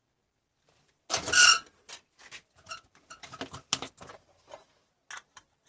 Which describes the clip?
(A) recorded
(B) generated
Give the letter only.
A